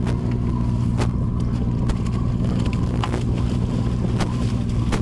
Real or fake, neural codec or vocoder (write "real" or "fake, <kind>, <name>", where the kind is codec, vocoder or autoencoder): real